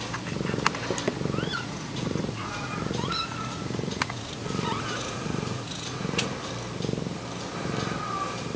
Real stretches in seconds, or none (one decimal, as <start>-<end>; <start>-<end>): 0.0-1.5; 6.5-8.6